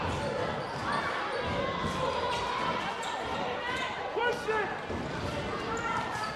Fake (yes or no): no